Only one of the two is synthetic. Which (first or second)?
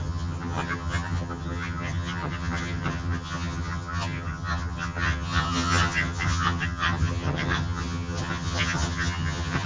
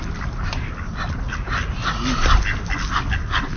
first